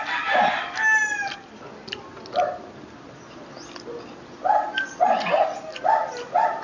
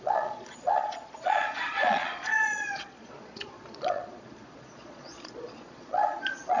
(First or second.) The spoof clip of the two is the second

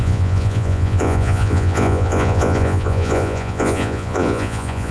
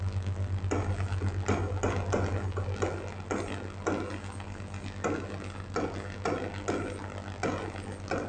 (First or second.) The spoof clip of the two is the first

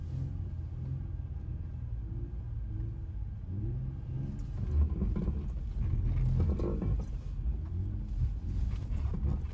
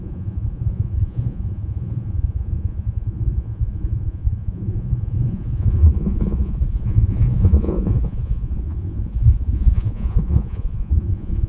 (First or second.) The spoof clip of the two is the second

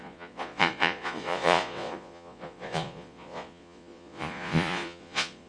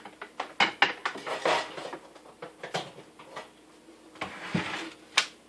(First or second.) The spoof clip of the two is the first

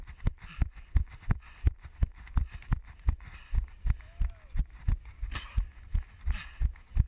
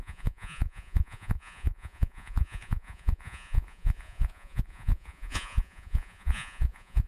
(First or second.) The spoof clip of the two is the second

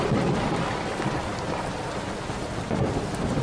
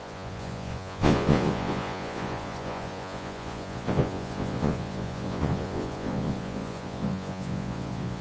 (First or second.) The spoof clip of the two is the second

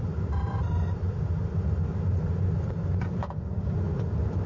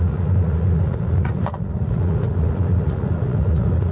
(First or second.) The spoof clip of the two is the second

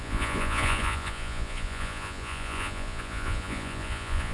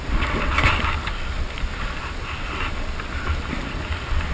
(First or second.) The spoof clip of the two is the first